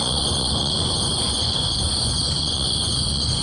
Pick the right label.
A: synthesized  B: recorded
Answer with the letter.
A